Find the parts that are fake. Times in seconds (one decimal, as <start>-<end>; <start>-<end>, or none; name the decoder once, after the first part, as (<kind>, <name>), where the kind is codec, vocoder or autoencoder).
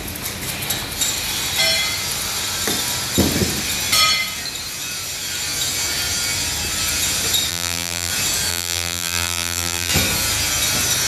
7.5-8.1 (vocoder, BigVGAN v2); 8.5-9.9